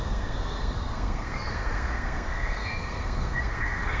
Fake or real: fake